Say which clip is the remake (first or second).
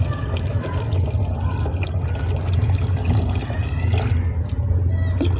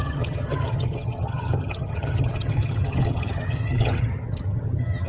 second